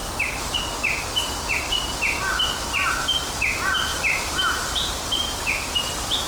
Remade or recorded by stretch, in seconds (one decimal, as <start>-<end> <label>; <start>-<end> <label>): 0.0-0.6 remade; 0.6-3.9 recorded; 3.9-5.5 remade; 5.5-6.3 recorded